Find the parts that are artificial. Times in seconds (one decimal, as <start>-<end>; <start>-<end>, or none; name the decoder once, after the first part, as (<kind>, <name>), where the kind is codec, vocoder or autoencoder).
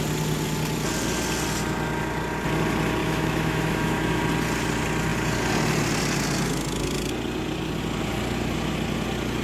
3.0-4.2 (autoencoder, DAC-VAE)